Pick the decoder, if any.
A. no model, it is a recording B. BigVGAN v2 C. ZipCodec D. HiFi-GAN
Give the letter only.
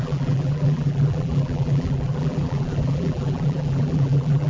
B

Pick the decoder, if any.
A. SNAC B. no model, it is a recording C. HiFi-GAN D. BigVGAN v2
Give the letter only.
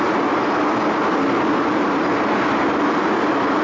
B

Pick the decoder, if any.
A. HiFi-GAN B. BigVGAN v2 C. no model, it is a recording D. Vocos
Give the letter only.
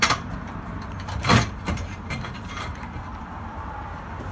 B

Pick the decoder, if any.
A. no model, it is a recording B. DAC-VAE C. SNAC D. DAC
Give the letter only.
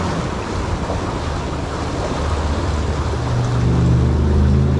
A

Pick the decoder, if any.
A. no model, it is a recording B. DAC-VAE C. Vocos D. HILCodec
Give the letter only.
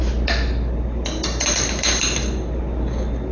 A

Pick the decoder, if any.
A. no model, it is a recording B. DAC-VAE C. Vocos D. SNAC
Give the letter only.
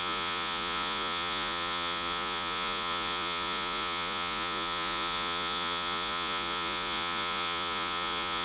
C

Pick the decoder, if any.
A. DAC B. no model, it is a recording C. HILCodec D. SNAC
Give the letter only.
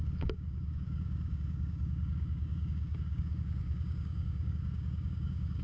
A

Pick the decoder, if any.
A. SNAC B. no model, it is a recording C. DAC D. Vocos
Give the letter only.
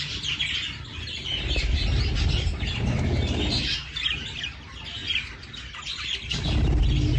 B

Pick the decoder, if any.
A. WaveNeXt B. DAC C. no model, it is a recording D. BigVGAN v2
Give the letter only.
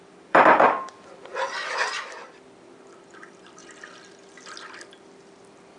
D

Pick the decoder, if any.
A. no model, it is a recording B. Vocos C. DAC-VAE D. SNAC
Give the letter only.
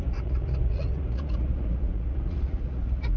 B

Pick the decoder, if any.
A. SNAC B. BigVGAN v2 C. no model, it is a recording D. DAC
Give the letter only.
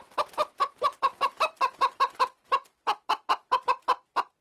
C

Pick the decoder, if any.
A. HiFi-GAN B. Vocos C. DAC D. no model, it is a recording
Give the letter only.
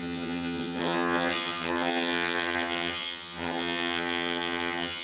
A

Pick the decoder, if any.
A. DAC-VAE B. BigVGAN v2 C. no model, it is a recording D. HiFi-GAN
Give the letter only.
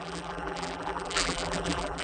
B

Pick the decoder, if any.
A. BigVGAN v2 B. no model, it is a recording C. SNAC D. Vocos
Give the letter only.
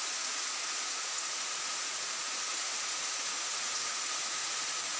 D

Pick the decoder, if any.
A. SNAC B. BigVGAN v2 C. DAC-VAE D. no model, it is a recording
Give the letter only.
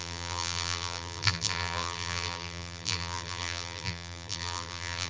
B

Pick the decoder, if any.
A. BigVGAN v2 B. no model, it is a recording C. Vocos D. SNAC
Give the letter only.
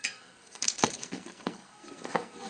D